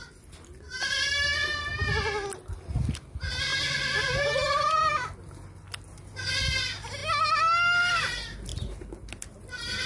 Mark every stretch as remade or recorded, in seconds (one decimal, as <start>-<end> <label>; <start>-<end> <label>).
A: 0.0-9.9 recorded